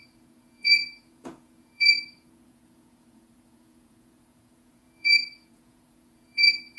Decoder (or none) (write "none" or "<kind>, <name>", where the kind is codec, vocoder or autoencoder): vocoder, Vocos